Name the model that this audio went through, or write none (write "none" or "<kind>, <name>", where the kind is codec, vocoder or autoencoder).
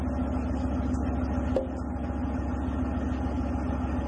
none